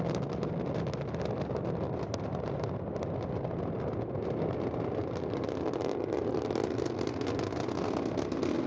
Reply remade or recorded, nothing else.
recorded